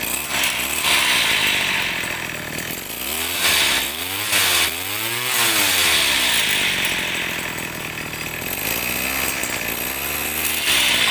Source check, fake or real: real